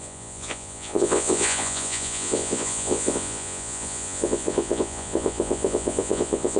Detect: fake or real fake